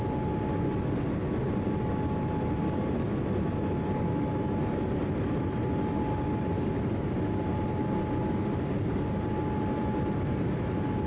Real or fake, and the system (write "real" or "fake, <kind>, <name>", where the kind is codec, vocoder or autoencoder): real